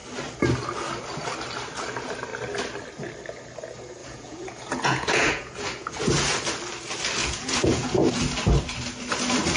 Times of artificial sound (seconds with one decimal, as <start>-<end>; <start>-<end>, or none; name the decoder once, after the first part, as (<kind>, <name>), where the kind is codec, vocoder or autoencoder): 4.0-6.0 (vocoder, Vocos); 7.2-8.2